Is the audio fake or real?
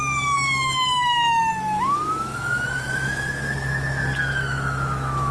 fake